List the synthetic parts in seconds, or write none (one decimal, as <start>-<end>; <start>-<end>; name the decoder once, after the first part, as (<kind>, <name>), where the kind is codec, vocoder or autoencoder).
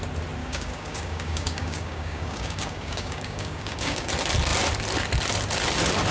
0.4-4.1 (codec, DAC)